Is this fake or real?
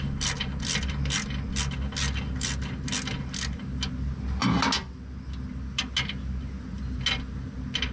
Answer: real